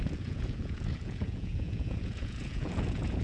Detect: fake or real fake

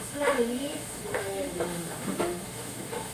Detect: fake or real fake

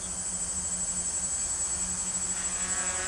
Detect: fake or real real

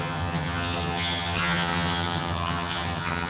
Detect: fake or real fake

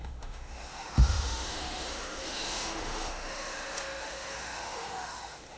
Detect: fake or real fake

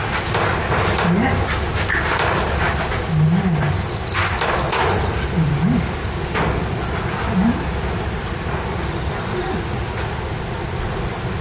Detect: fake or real real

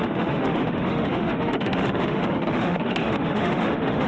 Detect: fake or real fake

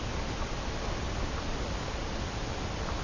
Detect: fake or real real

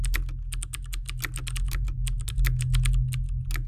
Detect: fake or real real